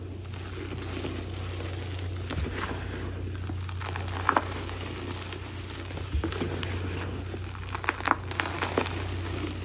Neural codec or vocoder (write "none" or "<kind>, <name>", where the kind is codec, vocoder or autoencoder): none